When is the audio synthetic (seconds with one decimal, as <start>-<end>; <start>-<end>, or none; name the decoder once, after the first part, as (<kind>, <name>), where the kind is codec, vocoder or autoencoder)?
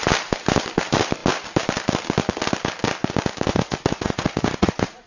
3.5-5.1 (vocoder, Vocos)